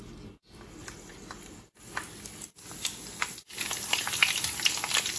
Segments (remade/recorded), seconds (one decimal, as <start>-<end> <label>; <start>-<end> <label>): 0.0-5.2 recorded